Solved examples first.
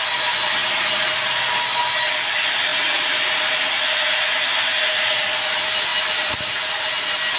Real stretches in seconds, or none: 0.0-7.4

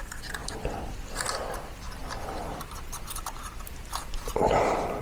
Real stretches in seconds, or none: 0.0-5.0

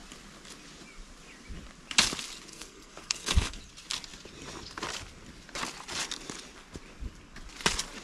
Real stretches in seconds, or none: 0.0-2.5; 3.6-8.0

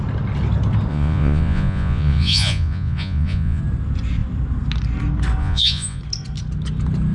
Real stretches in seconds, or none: 0.0-0.9; 3.6-5.4; 6.0-7.1

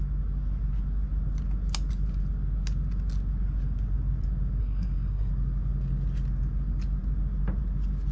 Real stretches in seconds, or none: 0.0-4.6; 5.3-8.1

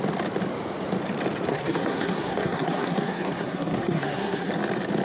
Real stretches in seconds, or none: 0.0-1.5; 4.5-5.0